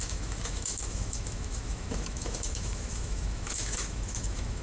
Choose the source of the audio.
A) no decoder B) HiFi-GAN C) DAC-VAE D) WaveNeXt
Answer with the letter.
C